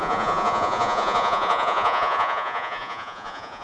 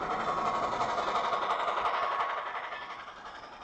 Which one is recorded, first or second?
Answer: second